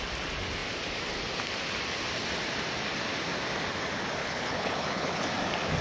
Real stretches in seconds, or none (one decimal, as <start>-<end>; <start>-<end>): 0.0-4.2; 5.2-5.8